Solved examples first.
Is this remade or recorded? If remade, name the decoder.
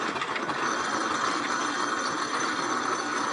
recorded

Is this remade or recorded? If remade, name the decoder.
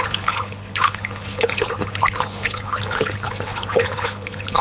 remade, codec, HILCodec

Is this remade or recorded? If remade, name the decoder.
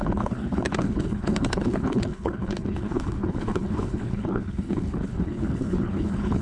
remade, codec, HILCodec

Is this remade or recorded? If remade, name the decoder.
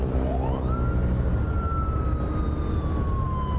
recorded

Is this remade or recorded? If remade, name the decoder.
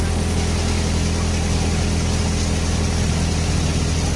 recorded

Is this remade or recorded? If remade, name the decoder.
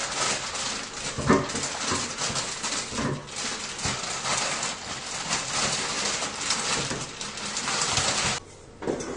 recorded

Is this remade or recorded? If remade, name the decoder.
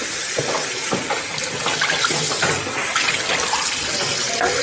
recorded